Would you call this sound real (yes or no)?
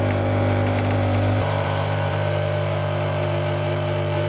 no